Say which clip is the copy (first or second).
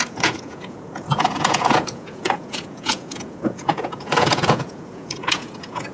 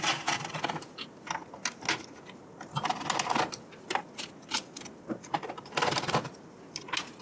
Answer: first